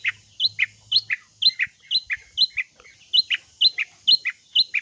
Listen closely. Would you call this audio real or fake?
real